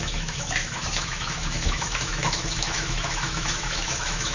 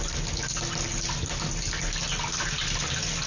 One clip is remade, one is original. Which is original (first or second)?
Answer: second